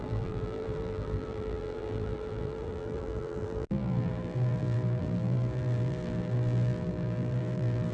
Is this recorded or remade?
remade